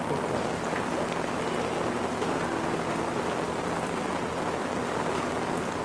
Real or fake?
real